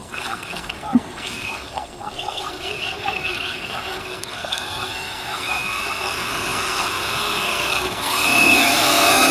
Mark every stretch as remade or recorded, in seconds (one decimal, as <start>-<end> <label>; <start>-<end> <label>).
0.0-9.3 remade